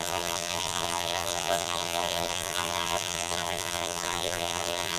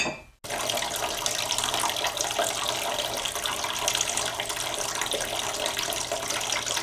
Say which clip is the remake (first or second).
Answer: first